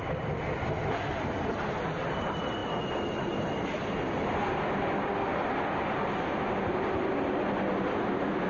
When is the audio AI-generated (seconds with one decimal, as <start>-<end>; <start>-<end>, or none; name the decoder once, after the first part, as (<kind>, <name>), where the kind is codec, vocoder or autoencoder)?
none